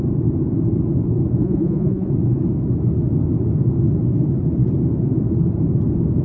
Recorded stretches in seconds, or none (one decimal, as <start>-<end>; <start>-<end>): 0.0-1.4; 2.1-6.2